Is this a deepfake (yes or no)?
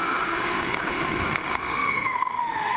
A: yes